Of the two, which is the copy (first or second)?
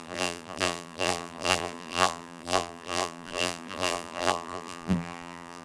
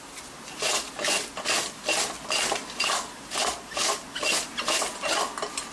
first